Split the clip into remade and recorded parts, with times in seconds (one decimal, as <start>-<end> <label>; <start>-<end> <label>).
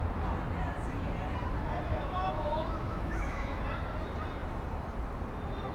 0.0-1.9 recorded; 1.9-3.6 remade; 3.6-5.7 recorded